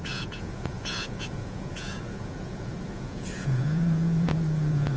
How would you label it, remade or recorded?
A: remade